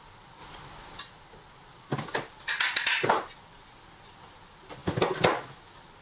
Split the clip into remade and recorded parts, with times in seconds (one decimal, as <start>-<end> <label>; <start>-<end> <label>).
0.0-6.0 recorded